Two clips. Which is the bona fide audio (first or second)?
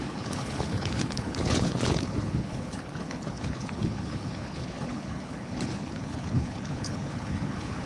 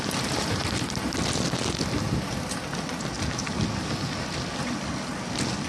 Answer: second